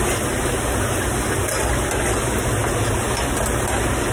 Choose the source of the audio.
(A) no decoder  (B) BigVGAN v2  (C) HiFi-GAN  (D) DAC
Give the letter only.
A